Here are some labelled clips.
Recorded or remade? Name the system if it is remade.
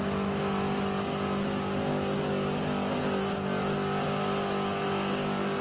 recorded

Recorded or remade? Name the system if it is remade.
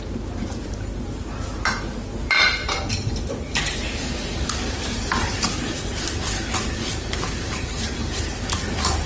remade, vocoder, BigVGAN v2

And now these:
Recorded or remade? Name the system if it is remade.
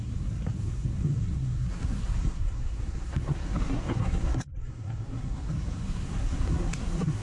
remade, codec, SNAC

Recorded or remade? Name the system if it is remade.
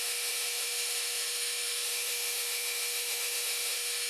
remade, autoencoder, DAC-VAE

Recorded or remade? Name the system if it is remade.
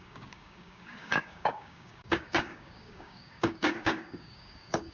remade, codec, DAC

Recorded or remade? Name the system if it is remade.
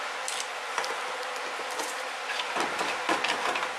recorded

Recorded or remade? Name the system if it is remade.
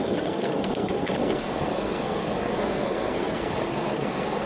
remade, codec, SNAC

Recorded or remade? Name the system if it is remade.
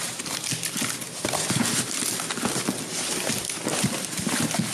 recorded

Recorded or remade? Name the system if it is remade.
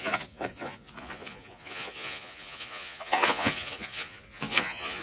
remade, vocoder, Vocos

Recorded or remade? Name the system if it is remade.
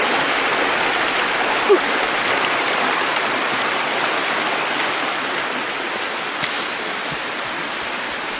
recorded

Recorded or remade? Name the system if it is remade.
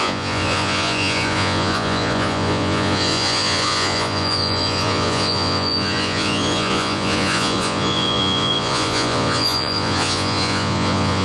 remade, vocoder, Vocos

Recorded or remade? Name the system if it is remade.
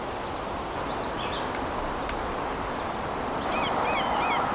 recorded